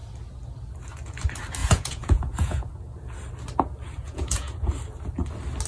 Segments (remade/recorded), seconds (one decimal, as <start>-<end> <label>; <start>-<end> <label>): 0.0-1.6 recorded; 1.6-2.7 remade; 2.7-4.0 recorded; 4.0-4.7 remade; 4.7-5.7 recorded

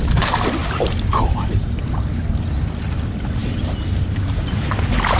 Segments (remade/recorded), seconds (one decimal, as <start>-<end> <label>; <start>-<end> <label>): 0.0-0.6 recorded; 0.6-1.8 remade; 1.8-5.2 recorded

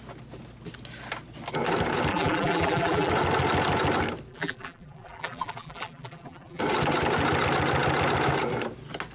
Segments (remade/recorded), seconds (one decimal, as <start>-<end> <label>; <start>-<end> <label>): 0.0-2.1 recorded; 2.1-3.1 remade; 3.1-4.3 recorded; 4.3-6.6 remade; 6.6-9.1 recorded

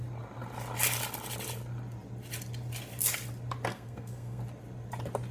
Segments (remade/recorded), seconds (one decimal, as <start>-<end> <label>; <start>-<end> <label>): 0.0-3.7 recorded; 3.7-4.4 remade; 4.4-5.3 recorded

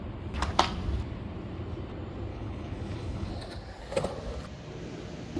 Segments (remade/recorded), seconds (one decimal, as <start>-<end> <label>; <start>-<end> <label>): 0.0-2.3 recorded; 2.3-3.3 remade; 3.3-5.4 recorded

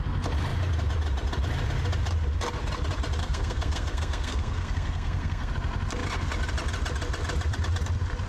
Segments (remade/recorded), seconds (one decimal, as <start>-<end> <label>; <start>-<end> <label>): 0.0-3.2 recorded; 3.2-5.5 remade; 5.5-8.3 recorded